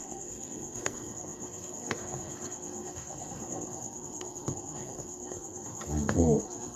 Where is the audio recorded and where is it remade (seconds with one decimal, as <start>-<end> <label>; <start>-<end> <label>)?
0.0-6.8 remade